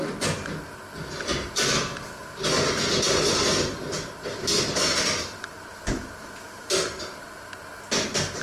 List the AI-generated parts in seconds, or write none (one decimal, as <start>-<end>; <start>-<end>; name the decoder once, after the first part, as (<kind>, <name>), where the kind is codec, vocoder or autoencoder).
1.4-2.4 (vocoder, BigVGAN v2); 3.3-7.5